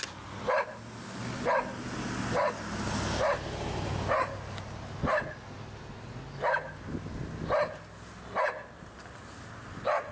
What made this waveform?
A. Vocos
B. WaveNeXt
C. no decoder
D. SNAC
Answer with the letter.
C